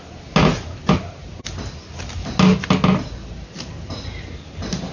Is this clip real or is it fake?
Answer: real